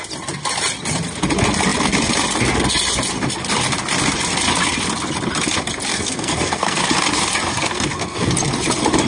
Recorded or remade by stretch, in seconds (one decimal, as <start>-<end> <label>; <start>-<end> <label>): 0.0-5.9 recorded; 5.9-6.8 remade; 6.8-7.5 recorded; 7.5-8.3 remade; 8.3-9.1 recorded